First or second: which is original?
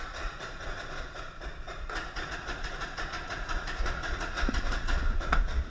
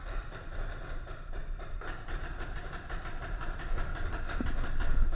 second